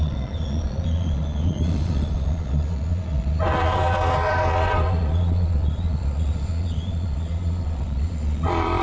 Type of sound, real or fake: fake